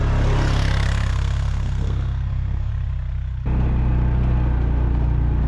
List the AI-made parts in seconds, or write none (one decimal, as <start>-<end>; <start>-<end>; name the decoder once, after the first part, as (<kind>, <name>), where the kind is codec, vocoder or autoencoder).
1.1-2.7 (codec, SNAC)

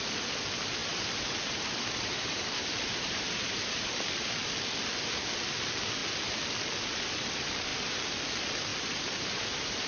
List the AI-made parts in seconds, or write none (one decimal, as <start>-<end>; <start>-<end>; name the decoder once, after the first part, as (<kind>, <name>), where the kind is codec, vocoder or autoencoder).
0.8-4.0 (vocoder, BigVGAN v2); 7.7-8.2; 8.7-9.9

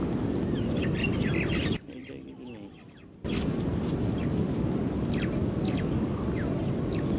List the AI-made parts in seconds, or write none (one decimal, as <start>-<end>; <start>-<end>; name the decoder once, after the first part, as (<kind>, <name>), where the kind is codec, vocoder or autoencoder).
none

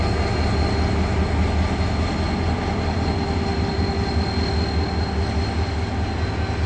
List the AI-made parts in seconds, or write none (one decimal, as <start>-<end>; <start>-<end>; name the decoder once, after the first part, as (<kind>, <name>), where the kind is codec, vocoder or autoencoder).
none

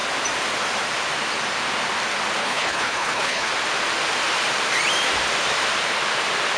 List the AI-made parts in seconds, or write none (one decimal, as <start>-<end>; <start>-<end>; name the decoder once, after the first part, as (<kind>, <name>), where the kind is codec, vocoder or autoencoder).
2.4-3.5 (codec, HILCodec)

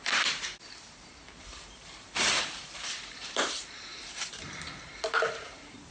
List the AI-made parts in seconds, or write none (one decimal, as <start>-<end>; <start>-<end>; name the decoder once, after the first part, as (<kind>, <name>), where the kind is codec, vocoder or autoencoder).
0.0-3.9 (vocoder, BigVGAN v2); 5.3-5.9